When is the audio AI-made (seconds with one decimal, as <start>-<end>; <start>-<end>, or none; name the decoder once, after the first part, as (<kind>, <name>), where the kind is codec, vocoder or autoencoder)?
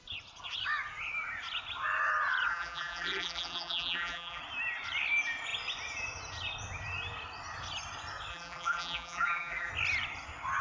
2.5-4.4 (vocoder, BigVGAN v2); 8.3-9.7